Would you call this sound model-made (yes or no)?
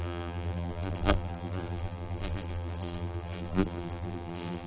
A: yes